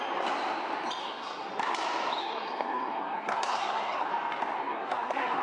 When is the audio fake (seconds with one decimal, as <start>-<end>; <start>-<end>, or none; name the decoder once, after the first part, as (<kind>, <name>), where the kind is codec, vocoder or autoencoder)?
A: 1.0-1.5 (codec, SNAC); 2.2-4.1; 4.6-5.4